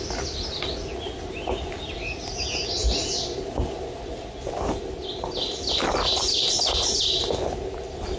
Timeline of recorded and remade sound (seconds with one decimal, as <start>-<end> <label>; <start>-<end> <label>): 0.0-8.2 recorded